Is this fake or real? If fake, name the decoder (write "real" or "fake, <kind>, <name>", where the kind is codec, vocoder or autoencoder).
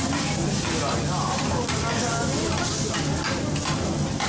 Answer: real